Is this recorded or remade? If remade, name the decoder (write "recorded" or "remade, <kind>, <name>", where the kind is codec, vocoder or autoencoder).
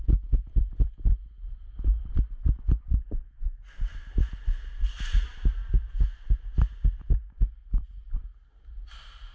recorded